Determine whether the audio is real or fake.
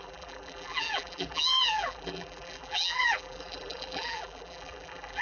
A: fake